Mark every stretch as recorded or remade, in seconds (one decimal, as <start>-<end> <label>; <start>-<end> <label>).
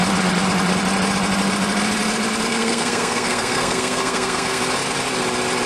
0.0-2.5 recorded; 2.5-4.6 remade; 4.6-5.7 recorded